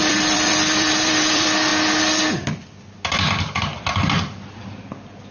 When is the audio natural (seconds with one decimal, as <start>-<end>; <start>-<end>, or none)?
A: 1.7-5.3